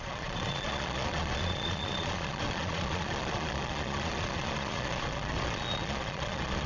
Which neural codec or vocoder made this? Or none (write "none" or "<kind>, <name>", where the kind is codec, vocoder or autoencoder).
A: vocoder, Vocos